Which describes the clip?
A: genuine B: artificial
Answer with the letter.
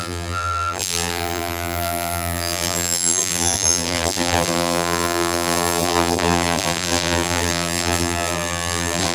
B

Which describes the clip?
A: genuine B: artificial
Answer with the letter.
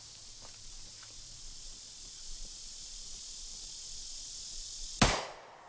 A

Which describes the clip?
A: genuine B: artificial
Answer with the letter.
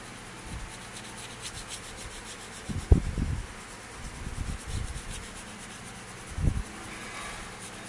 A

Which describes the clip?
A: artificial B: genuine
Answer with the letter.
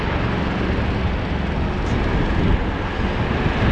B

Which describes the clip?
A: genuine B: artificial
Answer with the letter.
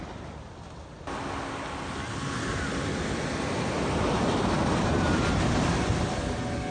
A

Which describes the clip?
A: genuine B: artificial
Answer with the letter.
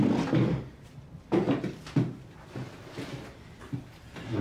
A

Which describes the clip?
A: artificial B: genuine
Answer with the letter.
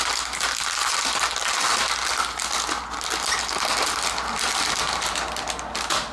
B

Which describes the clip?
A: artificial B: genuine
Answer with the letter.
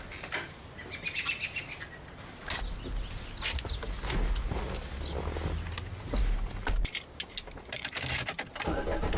B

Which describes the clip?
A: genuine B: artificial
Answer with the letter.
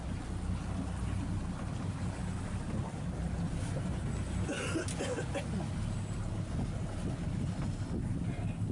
A